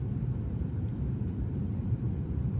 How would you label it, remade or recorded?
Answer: remade